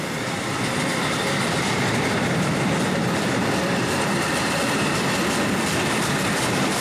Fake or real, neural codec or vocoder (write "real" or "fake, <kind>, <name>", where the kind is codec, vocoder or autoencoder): fake, vocoder, BigVGAN v2